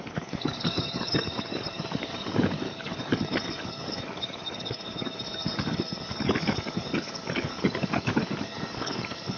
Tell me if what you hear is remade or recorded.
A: remade